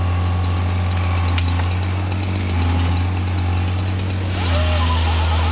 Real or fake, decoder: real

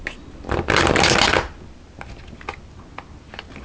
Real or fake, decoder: real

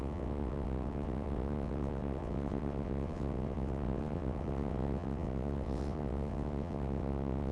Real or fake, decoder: fake, vocoder, WaveNeXt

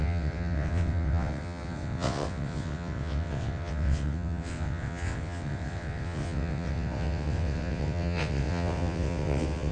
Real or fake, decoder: fake, vocoder, WaveNeXt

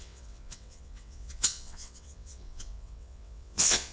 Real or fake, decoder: fake, vocoder, WaveNeXt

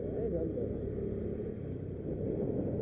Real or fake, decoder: real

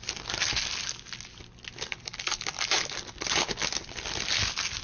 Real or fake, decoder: real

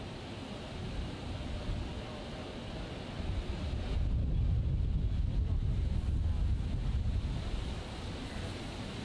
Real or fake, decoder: real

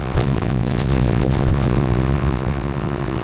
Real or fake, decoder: fake, vocoder, WaveNeXt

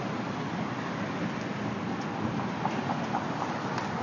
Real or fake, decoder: real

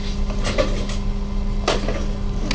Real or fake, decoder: real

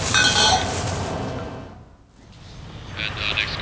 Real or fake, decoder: real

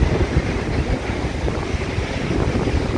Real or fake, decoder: real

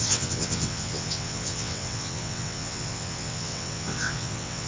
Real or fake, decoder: fake, vocoder, WaveNeXt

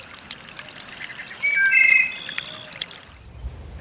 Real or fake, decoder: real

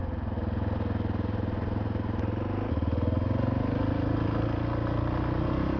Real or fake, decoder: real